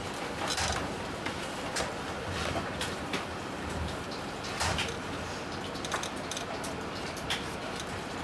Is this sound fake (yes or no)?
yes